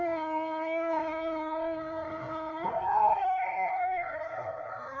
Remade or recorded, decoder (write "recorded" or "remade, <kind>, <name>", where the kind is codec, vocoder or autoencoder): remade, codec, SNAC